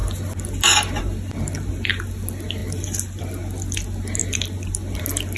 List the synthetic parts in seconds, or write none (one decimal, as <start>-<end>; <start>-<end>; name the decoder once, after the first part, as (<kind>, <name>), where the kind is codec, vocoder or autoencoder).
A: none